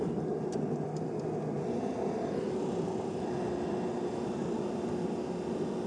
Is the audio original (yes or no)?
yes